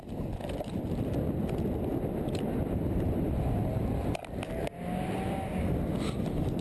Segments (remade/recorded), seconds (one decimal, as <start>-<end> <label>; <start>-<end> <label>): 0.0-6.6 recorded